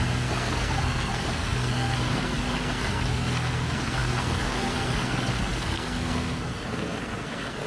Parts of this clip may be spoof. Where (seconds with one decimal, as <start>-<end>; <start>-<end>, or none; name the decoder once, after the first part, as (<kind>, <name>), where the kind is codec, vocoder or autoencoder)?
0.0-7.7 (codec, SNAC)